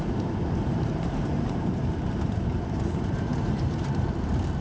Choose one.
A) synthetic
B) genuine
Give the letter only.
A